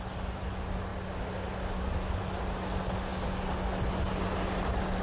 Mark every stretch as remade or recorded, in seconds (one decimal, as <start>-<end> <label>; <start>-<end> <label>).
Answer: 0.0-5.0 recorded